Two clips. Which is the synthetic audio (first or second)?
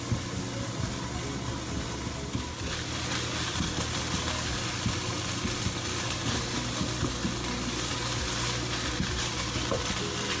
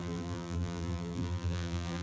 second